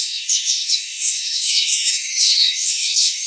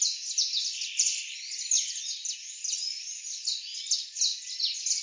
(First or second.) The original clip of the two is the second